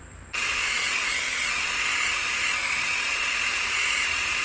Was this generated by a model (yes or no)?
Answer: yes